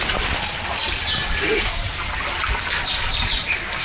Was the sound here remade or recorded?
recorded